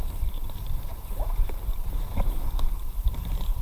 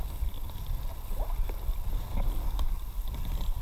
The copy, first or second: first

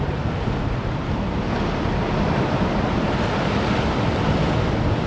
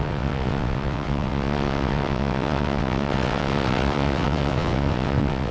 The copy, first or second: second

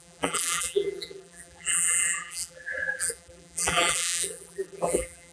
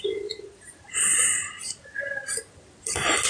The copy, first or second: first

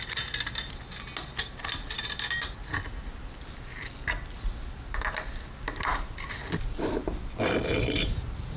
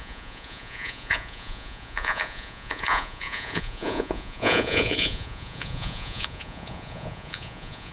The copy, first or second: second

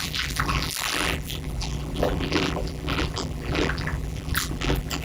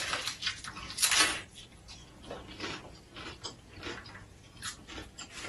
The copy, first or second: first